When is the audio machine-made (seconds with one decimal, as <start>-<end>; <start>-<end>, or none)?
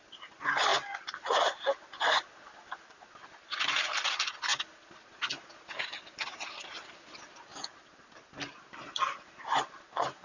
none